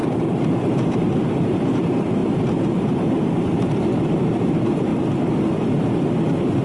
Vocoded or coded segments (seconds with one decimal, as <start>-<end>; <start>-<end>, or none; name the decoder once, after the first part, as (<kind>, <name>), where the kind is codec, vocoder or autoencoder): 0.0-4.9 (vocoder, BigVGAN v2)